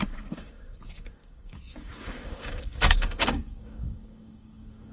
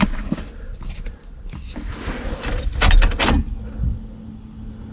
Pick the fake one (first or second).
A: first